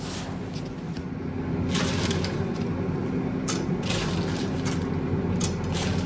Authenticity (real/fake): real